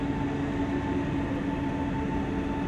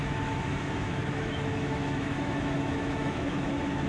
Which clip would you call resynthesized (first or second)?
second